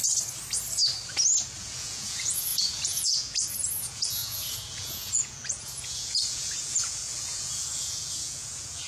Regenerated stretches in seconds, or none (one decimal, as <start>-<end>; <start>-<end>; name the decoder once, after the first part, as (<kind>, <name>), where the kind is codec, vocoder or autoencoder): 1.6-8.9 (vocoder, Vocos)